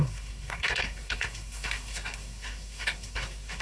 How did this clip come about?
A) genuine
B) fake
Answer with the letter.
B